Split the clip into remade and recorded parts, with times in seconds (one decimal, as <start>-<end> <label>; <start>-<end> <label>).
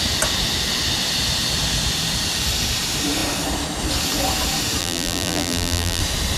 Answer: 0.0-4.8 recorded; 4.8-6.0 remade; 6.0-6.4 recorded